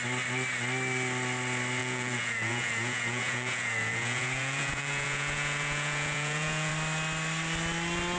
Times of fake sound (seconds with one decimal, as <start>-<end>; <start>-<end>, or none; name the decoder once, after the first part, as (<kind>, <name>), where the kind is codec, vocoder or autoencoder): 1.8-6.7 (vocoder, Vocos)